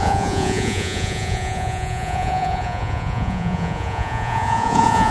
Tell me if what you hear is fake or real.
fake